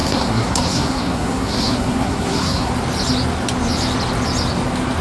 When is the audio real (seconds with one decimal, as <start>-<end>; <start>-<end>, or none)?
2.7-5.0